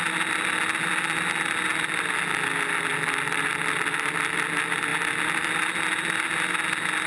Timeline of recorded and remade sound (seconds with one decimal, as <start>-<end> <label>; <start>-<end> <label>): 0.0-7.1 recorded